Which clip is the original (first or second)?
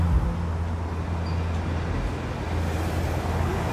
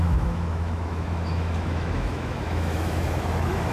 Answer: first